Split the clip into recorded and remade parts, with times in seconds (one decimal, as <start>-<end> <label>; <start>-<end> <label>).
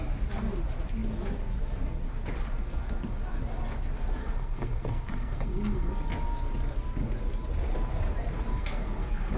0.0-4.2 recorded; 4.2-5.9 remade; 5.9-8.5 recorded; 8.5-9.4 remade